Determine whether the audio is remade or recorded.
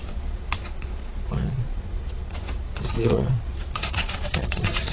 remade